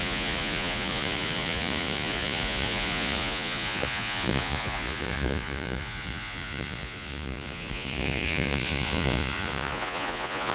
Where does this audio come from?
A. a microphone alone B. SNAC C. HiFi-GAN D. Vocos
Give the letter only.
D